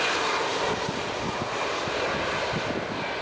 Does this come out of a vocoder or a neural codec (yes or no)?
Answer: no